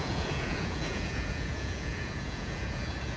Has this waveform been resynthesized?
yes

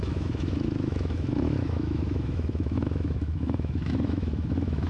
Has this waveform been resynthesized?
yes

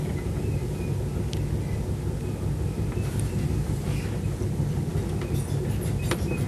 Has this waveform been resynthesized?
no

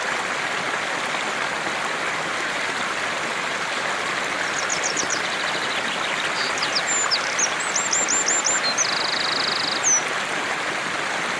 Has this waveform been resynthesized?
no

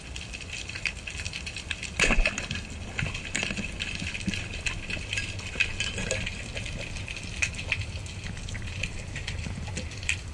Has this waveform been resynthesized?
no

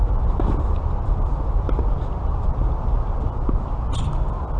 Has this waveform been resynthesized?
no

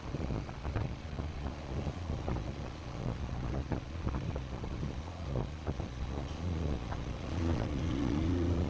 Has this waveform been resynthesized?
yes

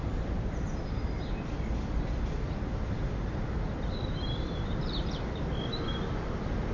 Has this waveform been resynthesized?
no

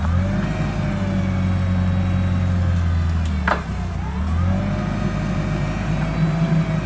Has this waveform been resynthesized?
no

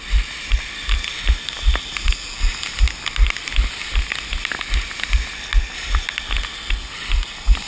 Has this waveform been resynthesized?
no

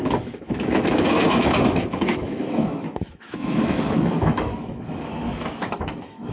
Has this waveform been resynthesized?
yes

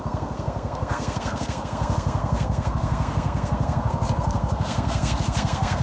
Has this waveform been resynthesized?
yes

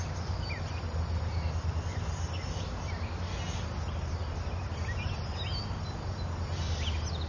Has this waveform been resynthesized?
no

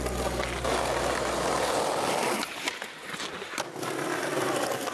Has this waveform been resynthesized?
no